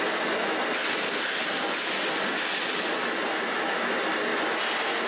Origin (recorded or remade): recorded